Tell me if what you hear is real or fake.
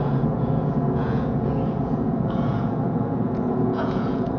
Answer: fake